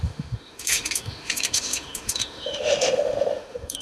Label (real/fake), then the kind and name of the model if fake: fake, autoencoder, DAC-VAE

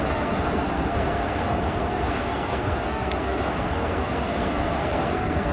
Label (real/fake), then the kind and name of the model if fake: fake, codec, SNAC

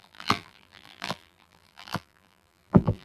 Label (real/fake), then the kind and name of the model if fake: fake, vocoder, BigVGAN v2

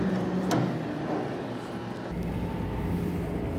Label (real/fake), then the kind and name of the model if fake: real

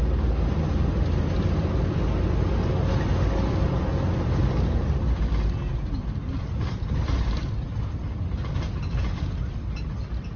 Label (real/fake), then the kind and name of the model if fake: real